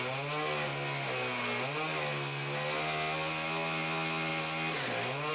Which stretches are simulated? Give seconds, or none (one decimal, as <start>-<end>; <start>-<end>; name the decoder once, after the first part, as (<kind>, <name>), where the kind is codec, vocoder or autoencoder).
none

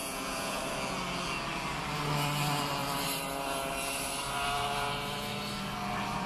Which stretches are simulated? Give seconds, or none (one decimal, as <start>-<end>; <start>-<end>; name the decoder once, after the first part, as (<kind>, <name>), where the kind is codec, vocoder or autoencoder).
0.0-0.6 (vocoder, Vocos)